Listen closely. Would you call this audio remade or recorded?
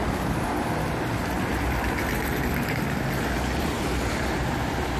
recorded